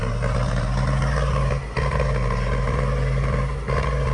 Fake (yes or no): no